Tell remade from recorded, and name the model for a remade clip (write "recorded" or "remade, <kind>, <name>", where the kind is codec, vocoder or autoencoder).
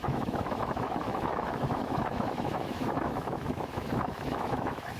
remade, autoencoder, DAC-VAE